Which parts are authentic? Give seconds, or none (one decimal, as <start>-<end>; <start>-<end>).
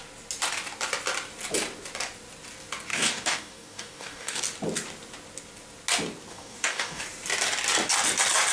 0.0-2.9; 4.4-6.3; 7.0-8.5